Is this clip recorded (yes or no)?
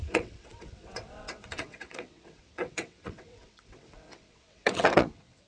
no